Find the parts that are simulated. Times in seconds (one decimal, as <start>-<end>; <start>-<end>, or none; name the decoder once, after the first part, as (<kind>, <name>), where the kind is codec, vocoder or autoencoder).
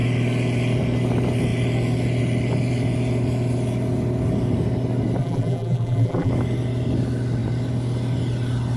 5.2-6.3 (vocoder, BigVGAN v2)